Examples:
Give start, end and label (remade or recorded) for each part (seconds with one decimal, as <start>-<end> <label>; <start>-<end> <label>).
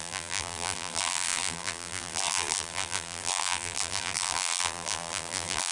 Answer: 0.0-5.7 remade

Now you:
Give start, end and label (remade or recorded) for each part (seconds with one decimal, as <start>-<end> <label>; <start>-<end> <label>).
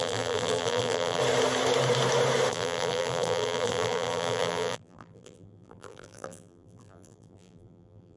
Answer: 0.0-1.2 remade; 1.2-2.5 recorded; 2.5-8.2 remade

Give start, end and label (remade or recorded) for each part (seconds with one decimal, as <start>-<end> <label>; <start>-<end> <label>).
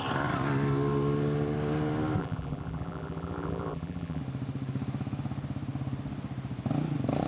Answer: 0.0-2.2 recorded; 2.2-4.2 remade; 4.2-7.3 recorded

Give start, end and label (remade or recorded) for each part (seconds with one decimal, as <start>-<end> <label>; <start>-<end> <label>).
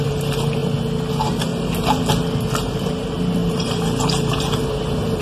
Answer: 0.0-0.6 remade; 0.6-1.1 recorded; 1.1-1.5 remade; 1.5-2.6 recorded; 2.6-5.2 remade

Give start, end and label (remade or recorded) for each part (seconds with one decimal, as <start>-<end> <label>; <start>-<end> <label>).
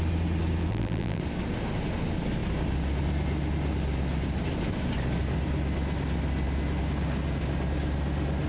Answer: 0.0-0.7 recorded; 0.7-1.2 remade; 1.2-8.5 recorded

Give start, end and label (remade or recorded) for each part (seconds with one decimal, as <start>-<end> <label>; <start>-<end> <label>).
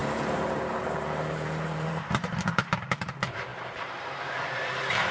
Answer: 0.0-3.1 remade; 3.1-5.1 recorded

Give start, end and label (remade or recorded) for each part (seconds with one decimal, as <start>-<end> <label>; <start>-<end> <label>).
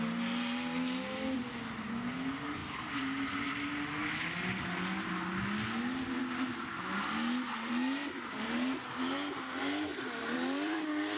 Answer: 0.0-9.9 recorded; 9.9-11.2 remade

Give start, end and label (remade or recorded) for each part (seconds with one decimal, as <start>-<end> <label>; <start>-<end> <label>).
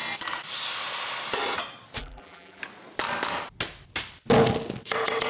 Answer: 0.0-2.0 recorded; 2.0-2.6 remade; 2.6-5.3 recorded